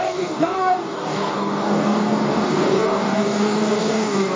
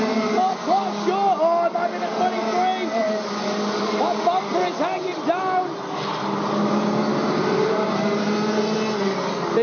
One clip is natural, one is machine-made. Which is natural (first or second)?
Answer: second